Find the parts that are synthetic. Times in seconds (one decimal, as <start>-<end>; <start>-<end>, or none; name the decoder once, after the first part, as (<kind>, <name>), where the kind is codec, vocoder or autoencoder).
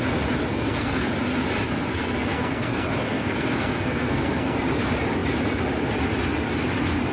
0.5-1.1 (codec, SNAC); 1.9-4.6